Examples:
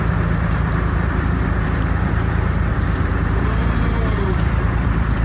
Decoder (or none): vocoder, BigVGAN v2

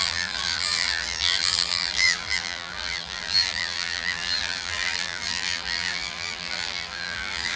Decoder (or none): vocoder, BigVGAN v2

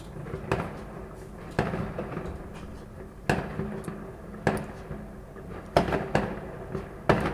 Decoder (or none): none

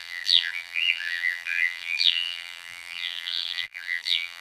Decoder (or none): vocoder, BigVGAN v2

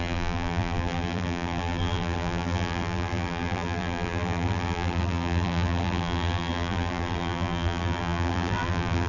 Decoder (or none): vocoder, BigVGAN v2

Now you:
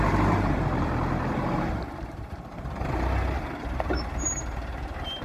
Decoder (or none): vocoder, BigVGAN v2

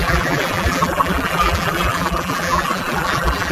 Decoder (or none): vocoder, BigVGAN v2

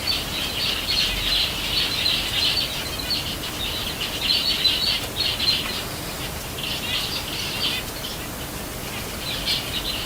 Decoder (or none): none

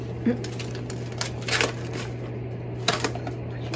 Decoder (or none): none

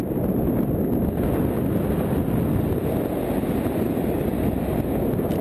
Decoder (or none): none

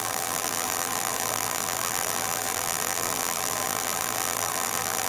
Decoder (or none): vocoder, BigVGAN v2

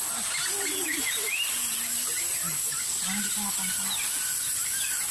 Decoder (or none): none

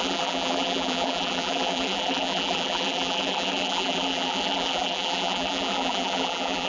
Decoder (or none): vocoder, BigVGAN v2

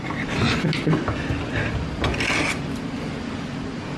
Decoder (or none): none